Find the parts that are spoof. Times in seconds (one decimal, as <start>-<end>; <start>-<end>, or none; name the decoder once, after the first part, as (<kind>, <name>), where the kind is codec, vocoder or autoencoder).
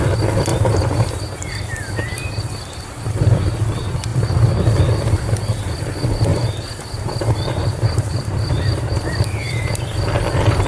0.5-1.2 (vocoder, BigVGAN v2); 6.3-9.7